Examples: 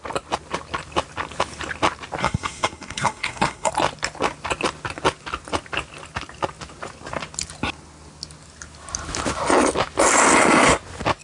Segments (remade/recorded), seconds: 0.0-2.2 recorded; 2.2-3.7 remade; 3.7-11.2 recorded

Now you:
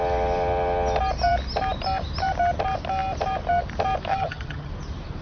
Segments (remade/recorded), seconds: 0.0-4.1 recorded; 4.1-4.7 remade; 4.7-5.2 recorded

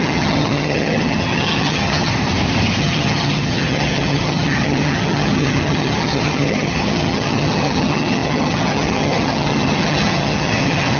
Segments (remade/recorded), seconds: 0.0-2.1 remade; 2.1-2.8 recorded; 2.8-11.0 remade

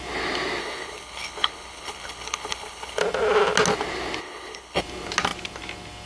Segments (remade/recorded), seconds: 0.0-0.6 recorded; 0.6-3.0 remade; 3.0-4.2 recorded; 4.2-4.8 remade; 4.8-6.1 recorded

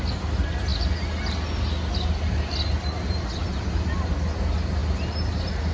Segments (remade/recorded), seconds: 0.0-5.7 recorded

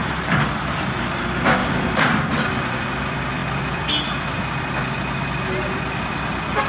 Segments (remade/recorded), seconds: 0.0-1.6 recorded; 1.6-2.1 remade; 2.1-6.7 recorded

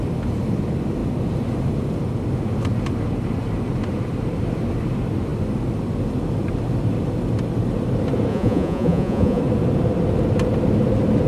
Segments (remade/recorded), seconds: 0.0-8.3 recorded; 8.3-9.4 remade; 9.4-11.3 recorded